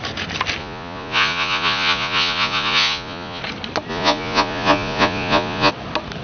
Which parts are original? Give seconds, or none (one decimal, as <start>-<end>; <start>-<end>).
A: 0.0-0.6; 3.4-3.9; 5.7-6.2

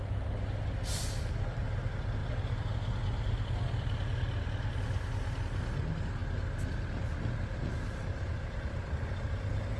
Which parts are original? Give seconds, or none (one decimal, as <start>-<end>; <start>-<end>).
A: 0.0-9.8